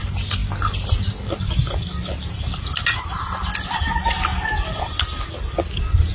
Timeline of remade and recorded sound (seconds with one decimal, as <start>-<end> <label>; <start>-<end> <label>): 0.0-6.1 recorded